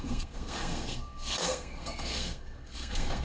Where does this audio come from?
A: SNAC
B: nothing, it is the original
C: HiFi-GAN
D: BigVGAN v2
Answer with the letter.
A